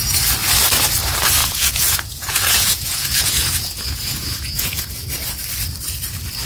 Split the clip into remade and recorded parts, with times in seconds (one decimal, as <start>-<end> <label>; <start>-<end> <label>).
0.0-1.4 recorded; 1.4-4.9 remade; 4.9-6.5 recorded